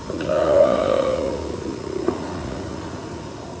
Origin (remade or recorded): remade